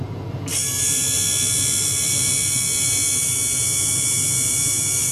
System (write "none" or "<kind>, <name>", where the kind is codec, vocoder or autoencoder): none